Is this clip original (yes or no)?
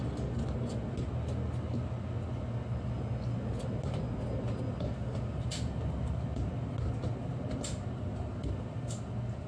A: yes